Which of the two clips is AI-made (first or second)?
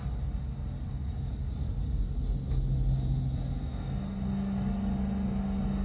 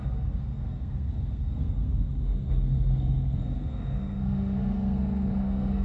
second